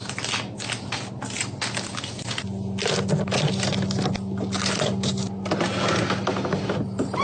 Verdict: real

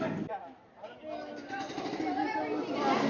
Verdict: real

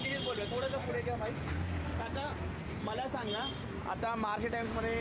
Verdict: real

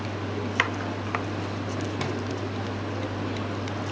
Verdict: real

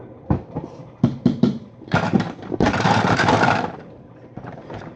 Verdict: fake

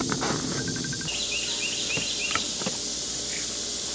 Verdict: real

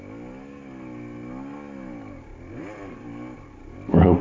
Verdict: real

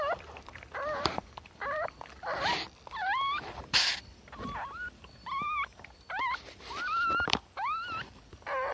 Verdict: fake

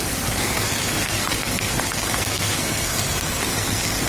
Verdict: fake